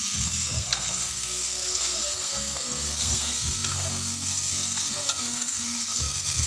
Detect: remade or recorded remade